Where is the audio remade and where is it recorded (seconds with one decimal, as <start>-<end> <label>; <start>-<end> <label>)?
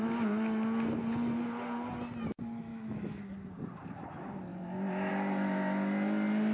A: 0.0-2.7 recorded; 2.7-3.2 remade; 3.2-6.5 recorded